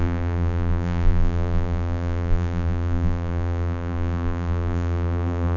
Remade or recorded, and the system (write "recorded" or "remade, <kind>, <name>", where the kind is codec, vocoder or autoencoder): remade, vocoder, BigVGAN v2